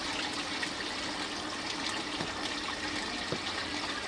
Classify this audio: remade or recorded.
recorded